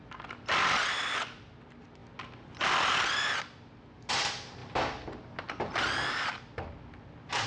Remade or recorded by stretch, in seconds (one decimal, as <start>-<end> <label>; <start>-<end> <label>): 0.0-7.5 recorded